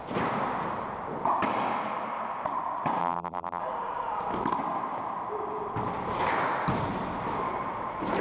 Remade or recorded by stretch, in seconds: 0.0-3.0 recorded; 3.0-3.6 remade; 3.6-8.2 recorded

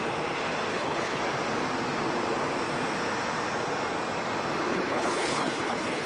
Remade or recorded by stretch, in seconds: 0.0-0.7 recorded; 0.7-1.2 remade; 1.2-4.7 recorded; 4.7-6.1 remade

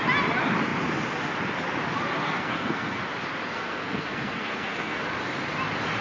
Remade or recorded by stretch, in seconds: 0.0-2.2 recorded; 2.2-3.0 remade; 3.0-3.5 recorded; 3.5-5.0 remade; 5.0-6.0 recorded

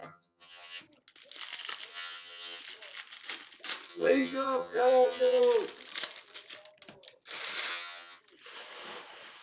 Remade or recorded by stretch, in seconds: 0.0-0.8 remade; 0.8-1.9 recorded; 1.9-2.6 remade; 2.6-3.9 recorded; 3.9-5.4 remade; 5.4-7.7 recorded; 7.7-8.2 remade; 8.2-9.4 recorded